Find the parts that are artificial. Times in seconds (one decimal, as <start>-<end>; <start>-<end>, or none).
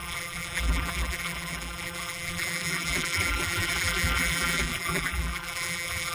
0.0-6.1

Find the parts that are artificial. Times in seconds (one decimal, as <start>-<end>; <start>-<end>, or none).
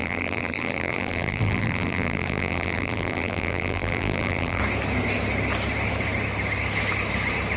0.0-4.6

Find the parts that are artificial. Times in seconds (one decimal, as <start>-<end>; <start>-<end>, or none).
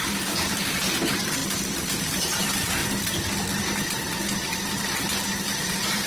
0.0-1.4; 2.2-2.8; 5.6-6.1